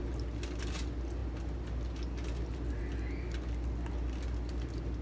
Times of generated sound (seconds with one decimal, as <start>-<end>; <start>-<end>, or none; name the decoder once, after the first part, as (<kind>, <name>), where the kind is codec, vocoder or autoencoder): none